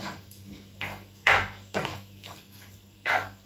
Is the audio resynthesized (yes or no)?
yes